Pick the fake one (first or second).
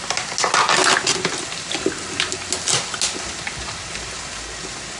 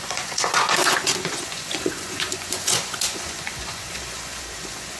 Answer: second